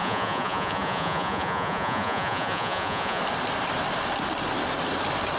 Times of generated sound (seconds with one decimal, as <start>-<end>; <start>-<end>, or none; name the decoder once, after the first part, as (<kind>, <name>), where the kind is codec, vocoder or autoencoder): 0.0-3.2 (vocoder, Vocos)